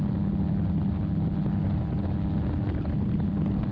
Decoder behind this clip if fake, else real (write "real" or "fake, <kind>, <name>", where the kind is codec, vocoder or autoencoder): real